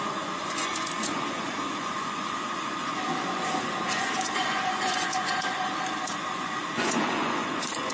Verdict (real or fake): fake